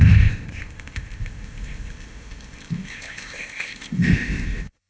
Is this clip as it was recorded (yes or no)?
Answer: no